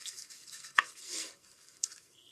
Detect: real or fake fake